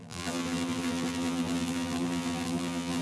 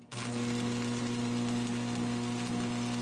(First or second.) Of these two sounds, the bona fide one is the second